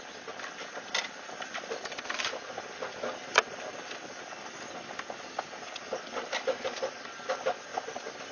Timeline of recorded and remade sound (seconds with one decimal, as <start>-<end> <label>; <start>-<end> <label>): 0.0-8.3 recorded